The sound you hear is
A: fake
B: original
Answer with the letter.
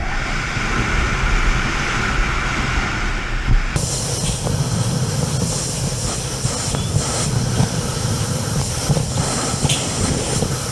B